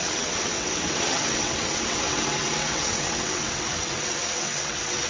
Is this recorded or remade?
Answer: remade